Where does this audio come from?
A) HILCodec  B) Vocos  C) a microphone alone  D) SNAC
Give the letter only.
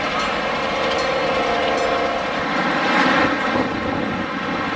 C